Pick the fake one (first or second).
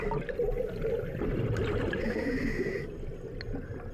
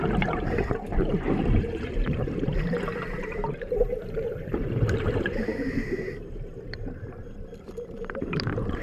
second